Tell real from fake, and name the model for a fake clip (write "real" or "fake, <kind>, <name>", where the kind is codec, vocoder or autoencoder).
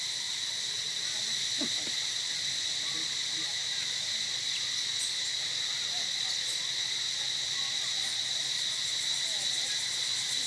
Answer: real